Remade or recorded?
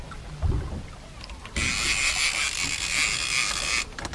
recorded